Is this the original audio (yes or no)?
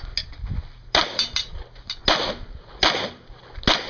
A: yes